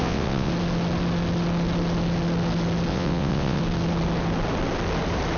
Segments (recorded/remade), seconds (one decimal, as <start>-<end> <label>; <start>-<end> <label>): 0.0-0.5 remade; 0.5-2.9 recorded; 2.9-3.6 remade; 3.6-5.4 recorded

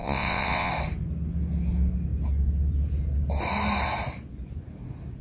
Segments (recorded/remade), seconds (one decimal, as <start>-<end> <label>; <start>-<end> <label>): 0.0-0.7 remade; 0.7-5.2 recorded

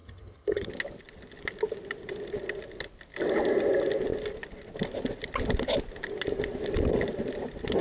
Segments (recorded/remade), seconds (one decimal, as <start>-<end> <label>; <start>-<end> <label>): 0.0-0.7 remade; 0.7-7.8 recorded

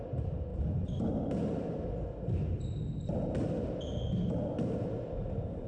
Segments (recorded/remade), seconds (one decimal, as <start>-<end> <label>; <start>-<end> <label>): 0.0-5.7 recorded

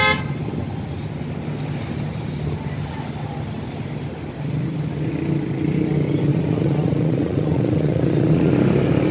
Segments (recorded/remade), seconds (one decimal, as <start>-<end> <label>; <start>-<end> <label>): 0.0-6.3 recorded; 6.3-8.5 remade; 8.5-9.1 recorded

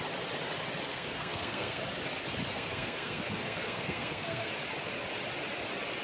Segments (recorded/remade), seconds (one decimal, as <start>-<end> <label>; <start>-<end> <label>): 0.0-0.9 recorded; 0.9-1.8 remade; 1.8-2.5 recorded; 2.5-4.5 remade; 4.5-6.0 recorded

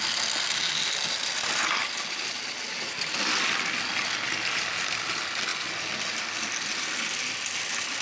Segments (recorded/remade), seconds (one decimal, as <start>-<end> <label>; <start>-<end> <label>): 0.0-5.5 recorded; 5.5-6.2 remade; 6.2-8.0 recorded

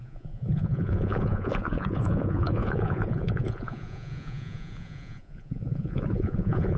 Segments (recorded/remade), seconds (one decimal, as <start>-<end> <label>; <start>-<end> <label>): 0.0-6.8 remade